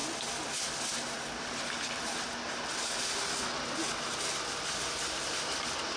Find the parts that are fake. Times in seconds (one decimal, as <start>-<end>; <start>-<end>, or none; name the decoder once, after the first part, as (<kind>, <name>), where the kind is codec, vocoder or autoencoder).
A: none